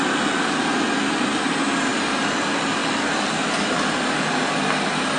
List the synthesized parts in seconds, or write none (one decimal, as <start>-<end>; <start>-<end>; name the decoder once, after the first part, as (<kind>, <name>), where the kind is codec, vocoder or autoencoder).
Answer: none